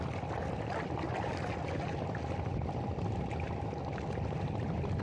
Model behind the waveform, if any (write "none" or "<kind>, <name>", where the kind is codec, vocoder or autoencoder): none